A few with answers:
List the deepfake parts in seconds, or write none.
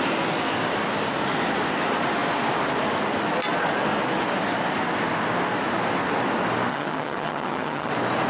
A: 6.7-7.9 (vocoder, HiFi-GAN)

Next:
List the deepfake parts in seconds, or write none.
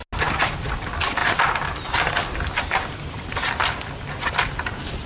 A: none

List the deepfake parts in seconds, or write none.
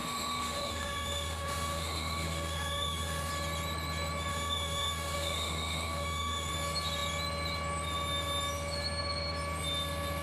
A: 0.0-3.3 (autoencoder, DAC-VAE); 4.3-6.5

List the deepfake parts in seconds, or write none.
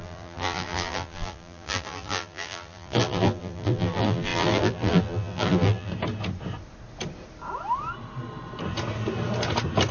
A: 0.0-5.9 (vocoder, BigVGAN v2)